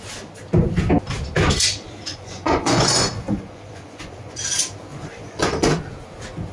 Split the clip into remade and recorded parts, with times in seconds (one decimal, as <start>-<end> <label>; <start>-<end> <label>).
0.0-2.1 recorded; 2.1-4.4 remade; 4.4-4.9 recorded; 4.9-5.8 remade; 5.8-6.5 recorded